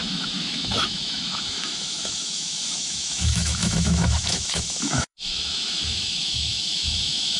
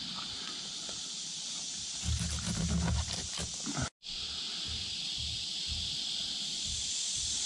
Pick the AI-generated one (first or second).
first